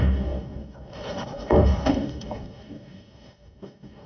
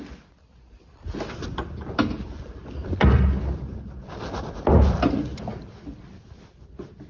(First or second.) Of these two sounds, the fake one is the first